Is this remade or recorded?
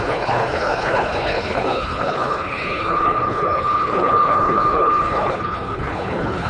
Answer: remade